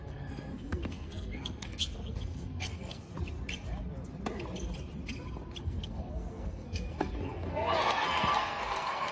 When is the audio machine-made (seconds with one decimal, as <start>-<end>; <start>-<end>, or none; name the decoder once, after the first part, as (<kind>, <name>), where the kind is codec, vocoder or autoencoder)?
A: 0.0-3.1 (codec, SNAC); 5.6-9.1